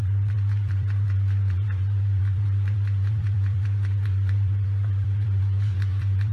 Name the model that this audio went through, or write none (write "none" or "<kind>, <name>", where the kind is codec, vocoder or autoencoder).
vocoder, BigVGAN v2